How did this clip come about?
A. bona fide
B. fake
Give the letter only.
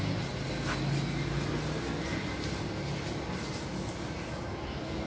A